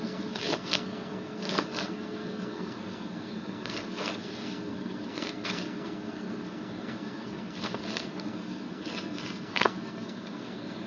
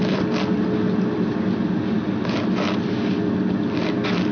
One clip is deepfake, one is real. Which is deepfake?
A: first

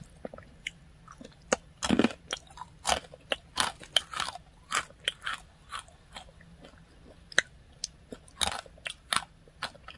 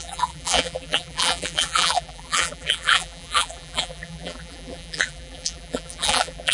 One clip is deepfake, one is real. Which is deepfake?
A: second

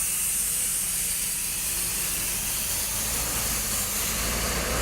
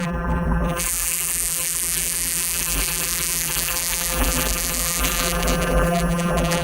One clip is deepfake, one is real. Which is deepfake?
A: second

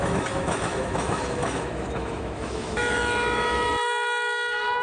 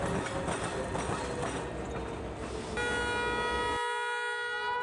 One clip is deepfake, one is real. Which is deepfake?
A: first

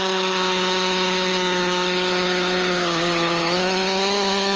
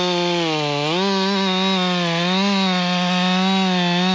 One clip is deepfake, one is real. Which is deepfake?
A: first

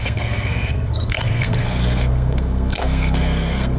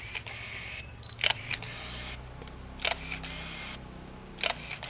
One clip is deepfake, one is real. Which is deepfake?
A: first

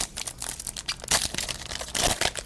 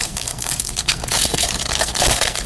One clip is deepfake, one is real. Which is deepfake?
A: second